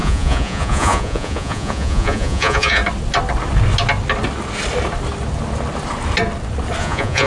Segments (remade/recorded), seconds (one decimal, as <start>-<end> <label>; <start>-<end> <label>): 0.0-2.8 remade; 2.8-6.8 recorded; 6.8-7.3 remade

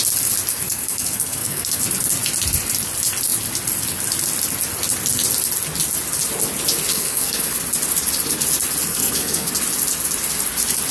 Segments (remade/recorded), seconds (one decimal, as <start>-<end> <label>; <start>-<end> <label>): 0.0-0.5 recorded; 0.5-1.8 remade; 1.8-6.9 recorded; 6.9-7.6 remade; 7.6-8.9 recorded; 8.9-9.5 remade; 9.5-10.9 recorded

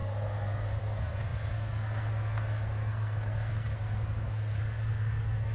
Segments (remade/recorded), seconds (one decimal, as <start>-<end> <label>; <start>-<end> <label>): 0.0-5.5 remade

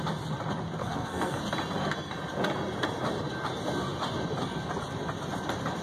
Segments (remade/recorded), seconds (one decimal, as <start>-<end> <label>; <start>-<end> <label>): 0.0-0.8 recorded; 0.8-1.4 remade; 1.4-5.8 recorded